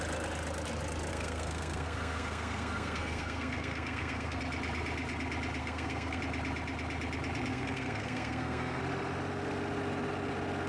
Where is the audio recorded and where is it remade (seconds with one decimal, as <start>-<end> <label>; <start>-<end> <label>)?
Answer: 0.0-1.1 recorded; 1.1-4.4 remade; 4.4-5.6 recorded; 5.6-6.2 remade; 6.2-7.5 recorded; 7.5-8.8 remade; 8.8-10.7 recorded